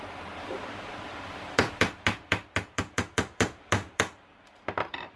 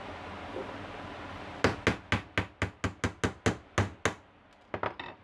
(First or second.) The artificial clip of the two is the first